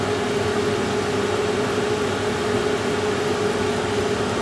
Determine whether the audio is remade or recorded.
recorded